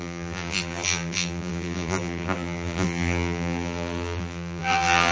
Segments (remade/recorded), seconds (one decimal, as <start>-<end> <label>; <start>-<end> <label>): 0.0-5.1 remade